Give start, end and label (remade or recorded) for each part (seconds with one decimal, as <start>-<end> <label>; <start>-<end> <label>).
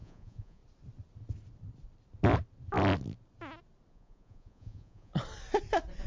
0.0-0.6 remade; 0.6-3.9 recorded; 3.9-5.1 remade; 5.1-6.1 recorded